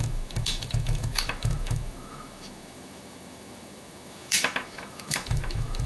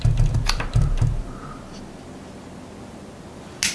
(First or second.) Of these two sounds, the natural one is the second